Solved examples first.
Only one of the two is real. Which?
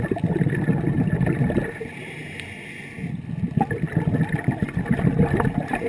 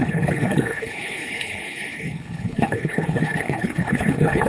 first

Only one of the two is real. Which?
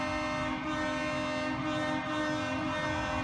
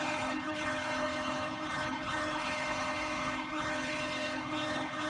first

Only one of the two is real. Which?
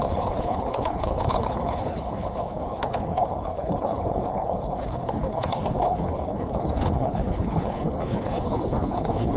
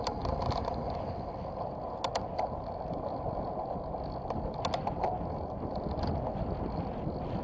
second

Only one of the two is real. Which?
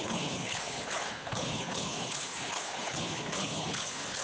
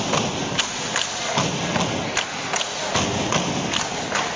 second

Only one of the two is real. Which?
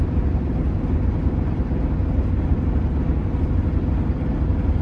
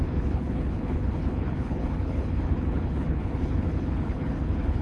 first